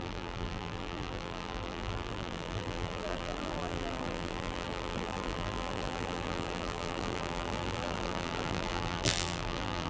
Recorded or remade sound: remade